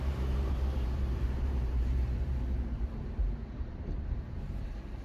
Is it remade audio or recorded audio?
remade